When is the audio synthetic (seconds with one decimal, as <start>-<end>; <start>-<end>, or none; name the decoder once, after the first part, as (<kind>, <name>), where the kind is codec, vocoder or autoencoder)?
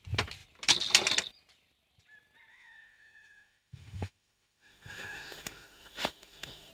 2.5-6.7 (autoencoder, DAC-VAE)